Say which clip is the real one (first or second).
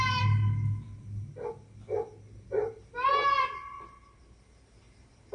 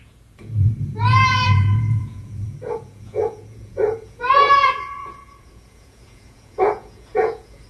first